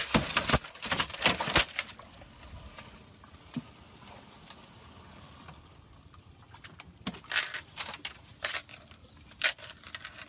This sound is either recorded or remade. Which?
recorded